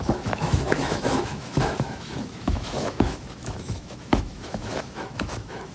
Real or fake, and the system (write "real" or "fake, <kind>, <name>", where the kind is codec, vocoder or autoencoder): fake, autoencoder, DAC-VAE